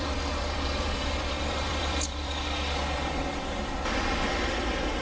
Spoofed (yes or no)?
yes